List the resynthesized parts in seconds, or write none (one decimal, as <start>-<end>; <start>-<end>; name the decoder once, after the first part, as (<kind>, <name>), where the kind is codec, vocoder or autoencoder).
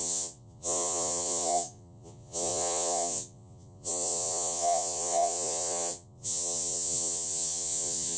0.0-8.2 (vocoder, Vocos)